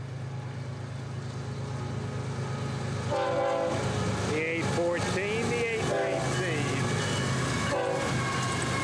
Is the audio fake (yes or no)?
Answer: no